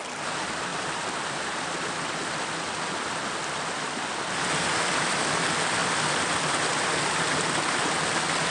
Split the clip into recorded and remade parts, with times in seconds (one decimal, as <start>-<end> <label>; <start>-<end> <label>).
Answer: 0.0-8.5 recorded